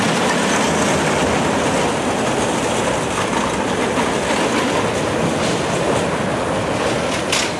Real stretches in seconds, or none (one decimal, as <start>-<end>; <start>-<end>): 0.0-7.6